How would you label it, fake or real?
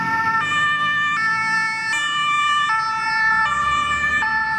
real